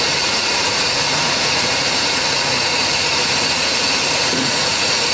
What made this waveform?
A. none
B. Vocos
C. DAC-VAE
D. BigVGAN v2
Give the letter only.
B